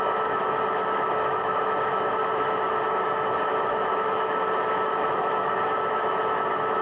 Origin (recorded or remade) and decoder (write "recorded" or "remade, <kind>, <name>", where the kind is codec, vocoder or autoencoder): remade, autoencoder, DAC-VAE